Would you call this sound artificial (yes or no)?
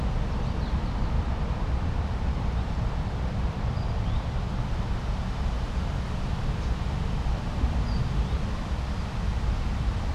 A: yes